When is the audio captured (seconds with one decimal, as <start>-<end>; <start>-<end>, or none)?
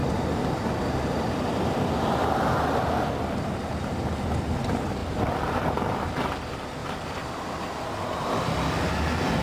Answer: 0.0-5.0; 5.8-6.8; 7.6-9.4